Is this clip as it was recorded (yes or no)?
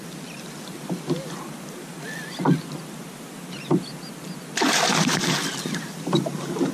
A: yes